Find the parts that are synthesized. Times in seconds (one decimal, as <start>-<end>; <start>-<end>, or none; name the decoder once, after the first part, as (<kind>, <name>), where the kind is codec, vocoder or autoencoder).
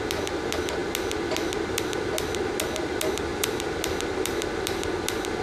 3.3-3.8 (vocoder, BigVGAN v2)